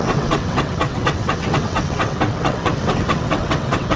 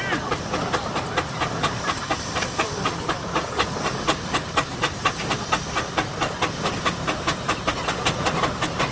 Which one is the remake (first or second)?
first